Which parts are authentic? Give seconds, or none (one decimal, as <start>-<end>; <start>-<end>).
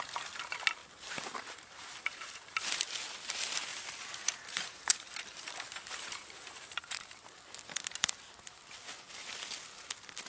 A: 0.0-0.8; 2.9-3.7; 7.4-10.3